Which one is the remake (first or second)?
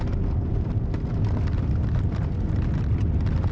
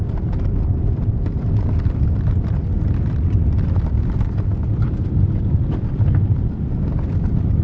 second